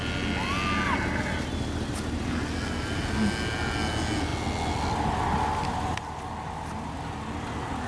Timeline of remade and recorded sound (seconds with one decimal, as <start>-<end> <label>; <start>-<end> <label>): 0.0-7.9 recorded